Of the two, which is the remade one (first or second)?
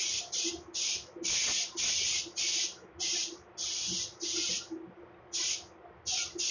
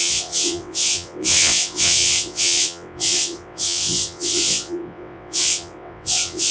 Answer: second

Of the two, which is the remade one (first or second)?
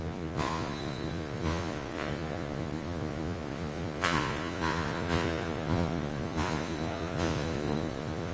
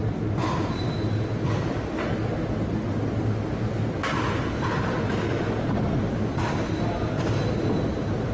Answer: first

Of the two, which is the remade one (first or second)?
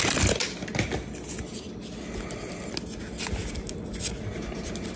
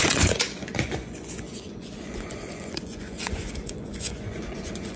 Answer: second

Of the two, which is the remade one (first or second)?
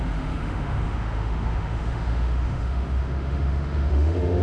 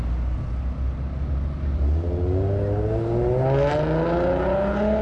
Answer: first